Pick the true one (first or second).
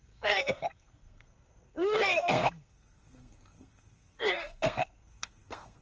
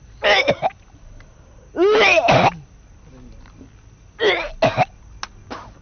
second